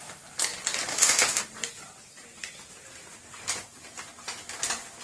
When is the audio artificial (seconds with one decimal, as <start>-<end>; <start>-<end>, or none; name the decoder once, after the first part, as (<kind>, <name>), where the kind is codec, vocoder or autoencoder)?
0.9-1.4 (autoencoder, DAC-VAE)